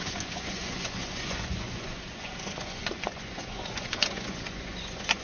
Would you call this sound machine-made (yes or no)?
yes